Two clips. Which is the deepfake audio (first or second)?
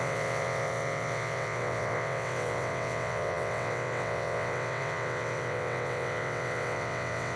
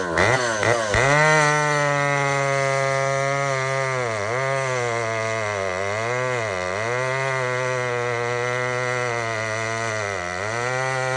first